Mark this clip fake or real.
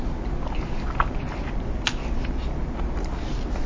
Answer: real